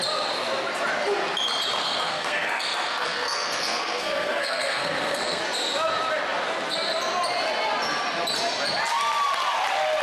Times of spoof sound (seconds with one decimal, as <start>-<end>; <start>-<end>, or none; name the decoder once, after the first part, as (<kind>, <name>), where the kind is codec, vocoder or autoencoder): 1.8-5.4 (codec, SNAC)